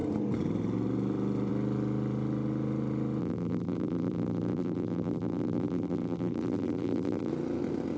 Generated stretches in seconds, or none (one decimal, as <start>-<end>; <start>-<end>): 3.2-7.3